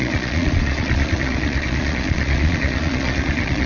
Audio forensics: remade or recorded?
remade